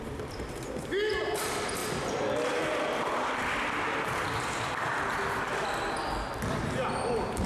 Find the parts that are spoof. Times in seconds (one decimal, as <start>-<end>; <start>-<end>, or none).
none